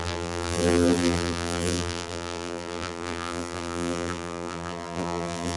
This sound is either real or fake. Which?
fake